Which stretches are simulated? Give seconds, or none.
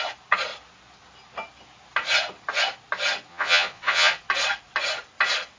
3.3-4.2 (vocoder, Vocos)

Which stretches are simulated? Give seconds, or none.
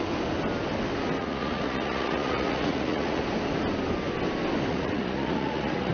1.2-3.2 (vocoder, Vocos); 4.7-5.9